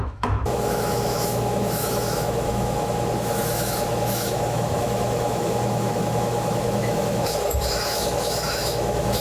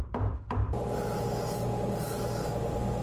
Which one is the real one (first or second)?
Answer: second